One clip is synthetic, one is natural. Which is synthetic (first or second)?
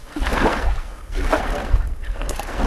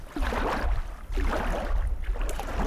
first